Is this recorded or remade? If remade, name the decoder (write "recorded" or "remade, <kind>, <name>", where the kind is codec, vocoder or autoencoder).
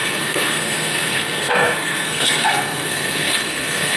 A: remade, codec, SNAC